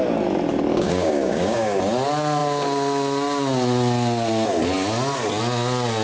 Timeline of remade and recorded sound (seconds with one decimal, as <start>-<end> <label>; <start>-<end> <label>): 0.0-0.7 recorded; 0.7-1.8 remade; 1.8-6.0 recorded